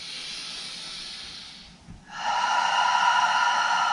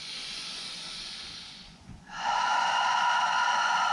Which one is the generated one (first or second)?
second